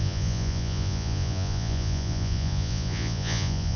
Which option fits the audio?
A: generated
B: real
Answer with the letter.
A